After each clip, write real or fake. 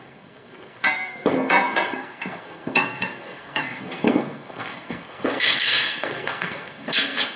fake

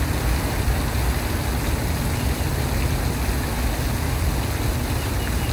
real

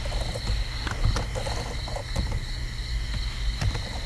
real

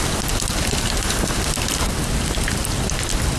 real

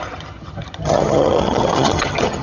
fake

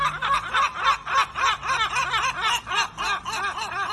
real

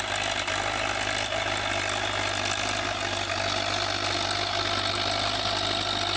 real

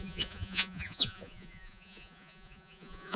fake